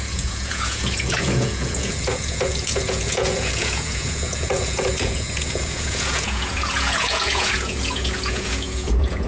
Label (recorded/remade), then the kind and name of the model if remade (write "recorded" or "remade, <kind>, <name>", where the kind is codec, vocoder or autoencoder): remade, vocoder, Vocos